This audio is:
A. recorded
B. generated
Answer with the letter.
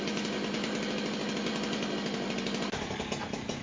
A